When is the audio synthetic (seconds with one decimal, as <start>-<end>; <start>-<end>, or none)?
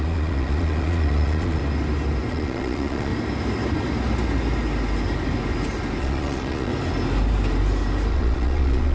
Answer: 0.0-1.6; 2.3-3.1; 6.0-6.7; 8.1-8.9